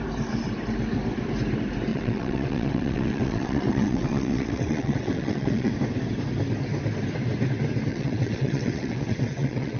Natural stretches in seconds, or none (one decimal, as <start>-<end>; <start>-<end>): 0.0-1.9; 5.7-7.9